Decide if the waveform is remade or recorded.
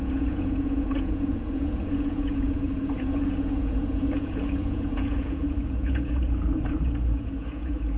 remade